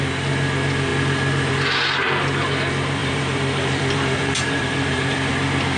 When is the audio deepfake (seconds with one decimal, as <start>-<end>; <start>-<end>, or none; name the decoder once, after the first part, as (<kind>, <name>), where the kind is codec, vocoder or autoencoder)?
3.0-5.3 (vocoder, BigVGAN v2)